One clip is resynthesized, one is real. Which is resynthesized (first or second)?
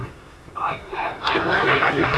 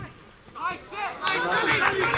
first